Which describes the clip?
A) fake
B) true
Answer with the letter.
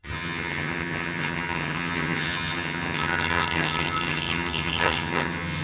A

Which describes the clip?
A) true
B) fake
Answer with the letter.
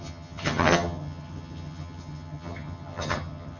B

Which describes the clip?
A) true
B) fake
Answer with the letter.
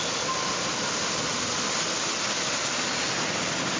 A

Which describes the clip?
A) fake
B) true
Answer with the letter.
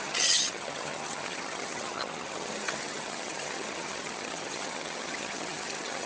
A